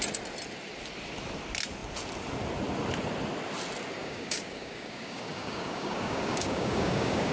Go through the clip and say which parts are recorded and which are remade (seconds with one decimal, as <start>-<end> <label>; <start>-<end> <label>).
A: 0.0-4.0 recorded; 4.0-7.3 remade

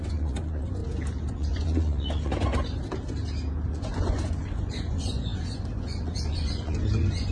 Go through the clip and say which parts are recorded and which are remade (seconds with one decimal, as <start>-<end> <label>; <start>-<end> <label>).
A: 0.0-0.8 remade; 0.8-1.3 recorded; 1.3-2.5 remade; 2.5-3.7 recorded; 3.7-7.3 remade

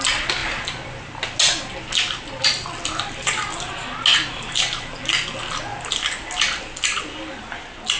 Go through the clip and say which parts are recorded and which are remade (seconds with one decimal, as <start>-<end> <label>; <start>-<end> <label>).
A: 0.0-8.0 recorded

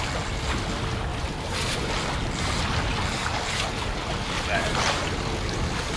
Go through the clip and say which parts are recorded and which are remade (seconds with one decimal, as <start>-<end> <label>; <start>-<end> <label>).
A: 0.0-1.1 recorded; 1.1-1.9 remade; 1.9-6.0 recorded

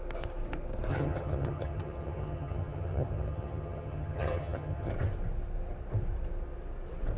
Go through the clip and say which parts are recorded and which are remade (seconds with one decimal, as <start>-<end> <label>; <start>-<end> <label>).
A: 0.0-0.9 recorded; 0.9-4.9 remade; 4.9-7.2 recorded